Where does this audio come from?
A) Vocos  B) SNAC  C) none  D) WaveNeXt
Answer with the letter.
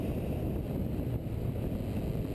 C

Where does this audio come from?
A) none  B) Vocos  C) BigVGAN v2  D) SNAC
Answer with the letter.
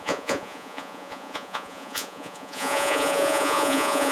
B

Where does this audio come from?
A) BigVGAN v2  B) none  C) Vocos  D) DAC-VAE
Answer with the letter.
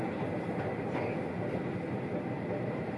B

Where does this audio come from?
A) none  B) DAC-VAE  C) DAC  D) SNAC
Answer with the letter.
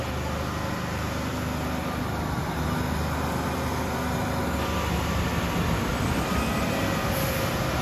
A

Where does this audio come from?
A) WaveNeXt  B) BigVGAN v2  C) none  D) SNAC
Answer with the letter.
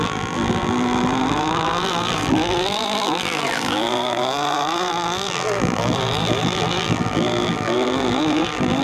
B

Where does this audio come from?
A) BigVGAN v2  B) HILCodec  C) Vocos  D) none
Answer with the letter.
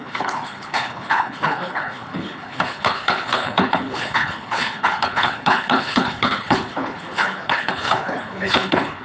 B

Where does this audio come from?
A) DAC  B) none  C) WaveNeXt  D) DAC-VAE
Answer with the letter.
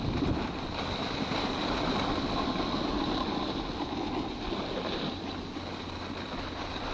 B